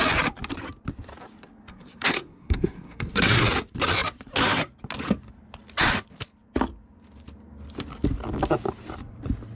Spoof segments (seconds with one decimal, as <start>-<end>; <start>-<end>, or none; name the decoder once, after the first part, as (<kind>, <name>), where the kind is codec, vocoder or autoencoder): 1.7-3.4 (codec, SNAC)

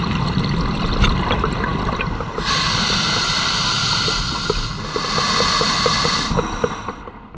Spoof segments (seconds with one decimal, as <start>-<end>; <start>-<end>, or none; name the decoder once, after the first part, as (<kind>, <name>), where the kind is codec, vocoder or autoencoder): none